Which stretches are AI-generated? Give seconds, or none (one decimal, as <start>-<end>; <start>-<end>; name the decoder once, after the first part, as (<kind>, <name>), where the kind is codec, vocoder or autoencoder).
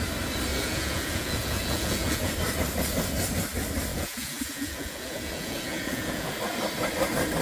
0.5-2.3 (vocoder, Vocos); 3.9-6.3